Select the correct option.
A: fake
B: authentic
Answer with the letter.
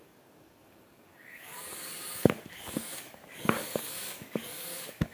A